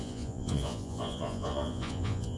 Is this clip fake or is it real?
fake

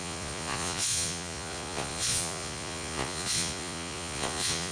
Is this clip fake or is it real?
fake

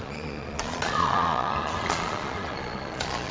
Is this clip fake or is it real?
fake